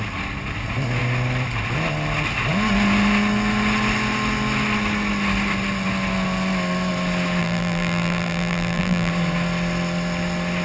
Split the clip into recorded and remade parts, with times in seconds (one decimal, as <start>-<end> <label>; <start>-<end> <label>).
0.0-7.4 recorded; 7.4-9.1 remade; 9.1-10.6 recorded